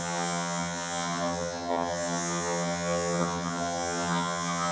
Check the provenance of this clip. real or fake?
fake